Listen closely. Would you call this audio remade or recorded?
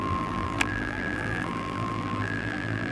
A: remade